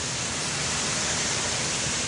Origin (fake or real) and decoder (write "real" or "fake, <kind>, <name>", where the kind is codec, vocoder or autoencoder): real